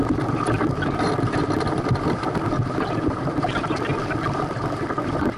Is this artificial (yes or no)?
no